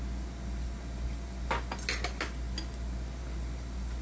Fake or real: real